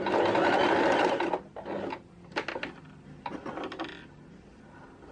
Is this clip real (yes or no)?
yes